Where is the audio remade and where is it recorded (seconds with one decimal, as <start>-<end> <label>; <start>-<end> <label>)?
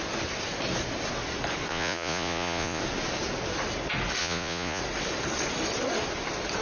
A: 0.0-1.7 recorded; 1.7-2.8 remade; 2.8-4.2 recorded; 4.2-4.8 remade; 4.8-6.6 recorded